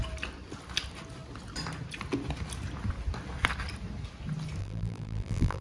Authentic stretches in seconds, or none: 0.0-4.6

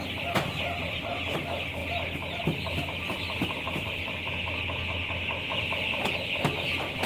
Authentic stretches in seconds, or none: 0.0-7.1